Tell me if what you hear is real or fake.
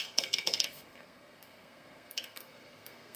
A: fake